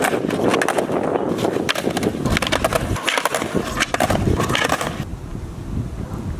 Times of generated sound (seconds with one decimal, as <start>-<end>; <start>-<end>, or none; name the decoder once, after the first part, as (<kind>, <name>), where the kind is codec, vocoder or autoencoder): 5.1-5.9 (vocoder, BigVGAN v2)